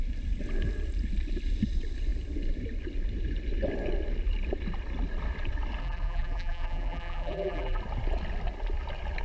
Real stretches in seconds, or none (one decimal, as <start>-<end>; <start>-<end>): 0.0-5.8; 7.8-9.2